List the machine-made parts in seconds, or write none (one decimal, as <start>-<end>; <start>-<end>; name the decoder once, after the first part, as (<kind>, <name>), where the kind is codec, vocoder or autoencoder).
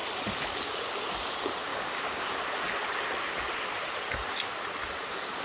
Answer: 1.7-2.2 (codec, DAC)